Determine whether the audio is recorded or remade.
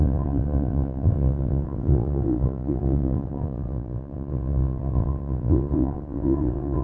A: remade